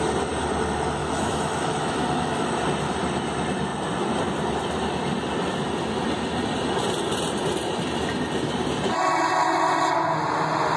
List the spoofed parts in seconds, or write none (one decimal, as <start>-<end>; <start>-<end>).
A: 1.0-2.5